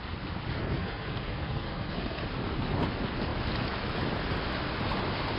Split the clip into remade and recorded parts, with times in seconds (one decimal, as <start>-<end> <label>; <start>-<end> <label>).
0.0-0.6 recorded; 0.6-2.2 remade; 2.2-5.4 recorded